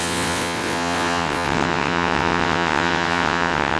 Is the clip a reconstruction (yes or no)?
yes